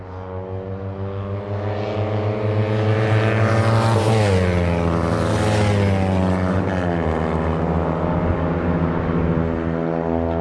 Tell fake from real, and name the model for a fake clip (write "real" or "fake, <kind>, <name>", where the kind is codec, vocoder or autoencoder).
real